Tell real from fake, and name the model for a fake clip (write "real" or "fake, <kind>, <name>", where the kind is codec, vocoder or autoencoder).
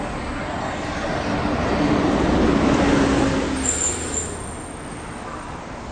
real